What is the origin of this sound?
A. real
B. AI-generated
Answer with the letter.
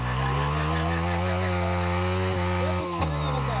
A